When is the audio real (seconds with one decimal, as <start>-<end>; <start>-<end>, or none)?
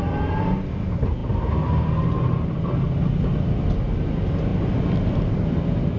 0.0-6.0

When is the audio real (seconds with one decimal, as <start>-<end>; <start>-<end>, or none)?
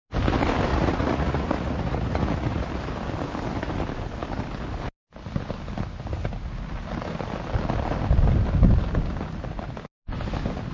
0.0-0.7; 2.7-10.7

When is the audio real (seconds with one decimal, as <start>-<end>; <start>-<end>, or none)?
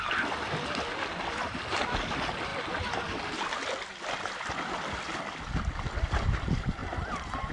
0.0-6.8